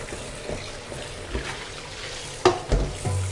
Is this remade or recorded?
recorded